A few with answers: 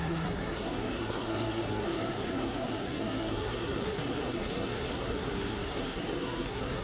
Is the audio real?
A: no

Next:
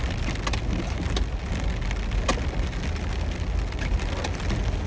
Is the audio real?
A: yes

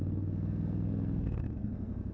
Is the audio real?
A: no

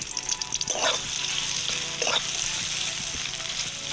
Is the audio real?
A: yes